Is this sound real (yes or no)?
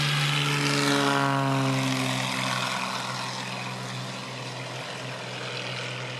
yes